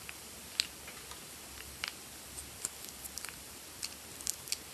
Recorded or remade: recorded